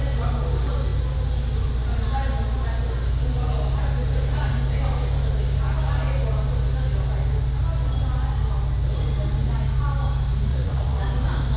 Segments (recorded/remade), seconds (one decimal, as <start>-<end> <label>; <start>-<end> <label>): 0.0-10.5 recorded; 10.5-11.0 remade; 11.0-11.6 recorded